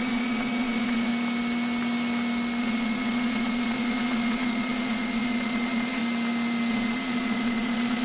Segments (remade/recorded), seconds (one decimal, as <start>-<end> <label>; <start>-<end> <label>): 0.0-1.1 remade; 1.1-2.6 recorded; 2.6-6.0 remade; 6.0-6.7 recorded; 6.7-8.0 remade